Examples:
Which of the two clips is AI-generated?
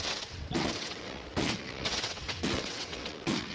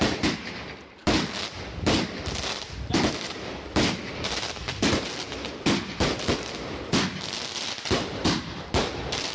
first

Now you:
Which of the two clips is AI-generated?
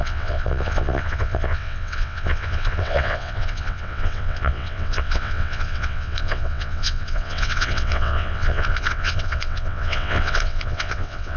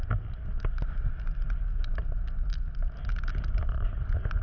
first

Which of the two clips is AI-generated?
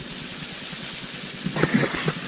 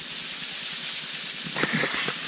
first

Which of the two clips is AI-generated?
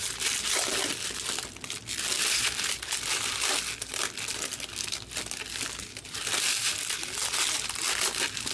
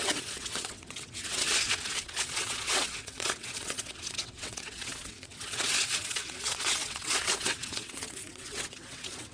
second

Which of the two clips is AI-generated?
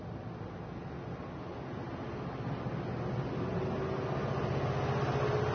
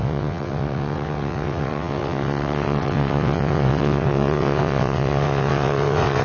second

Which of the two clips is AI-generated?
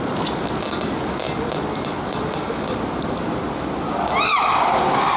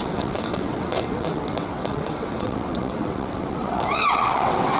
second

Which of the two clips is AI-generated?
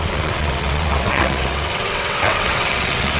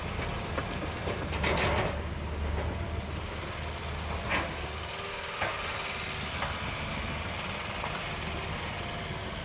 first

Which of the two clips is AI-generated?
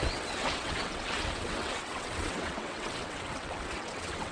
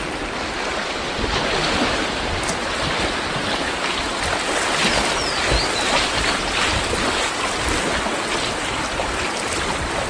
first